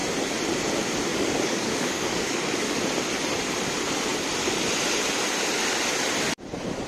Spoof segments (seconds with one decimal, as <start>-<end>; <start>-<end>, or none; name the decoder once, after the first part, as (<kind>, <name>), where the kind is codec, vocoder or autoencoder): 1.1-2.8 (codec, DAC)